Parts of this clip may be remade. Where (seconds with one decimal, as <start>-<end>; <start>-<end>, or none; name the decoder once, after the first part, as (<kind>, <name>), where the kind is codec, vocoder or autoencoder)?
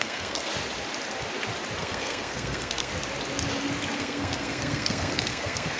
0.0-0.5 (codec, SNAC); 1.8-2.9; 4.0-5.8